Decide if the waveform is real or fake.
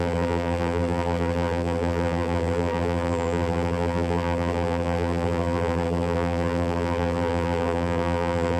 fake